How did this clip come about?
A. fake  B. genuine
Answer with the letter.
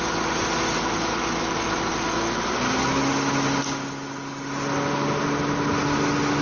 B